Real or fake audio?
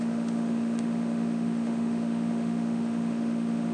fake